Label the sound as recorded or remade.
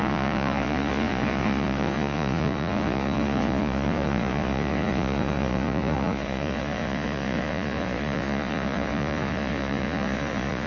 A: remade